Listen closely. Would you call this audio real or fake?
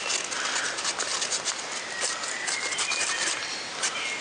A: real